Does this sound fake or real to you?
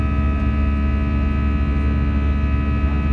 real